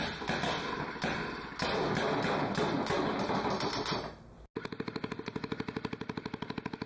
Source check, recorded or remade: recorded